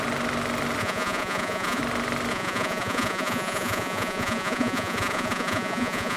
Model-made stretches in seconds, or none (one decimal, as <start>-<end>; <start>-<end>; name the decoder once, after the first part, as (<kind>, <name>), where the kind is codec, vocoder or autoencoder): 0.8-1.8 (vocoder, Vocos); 2.3-6.2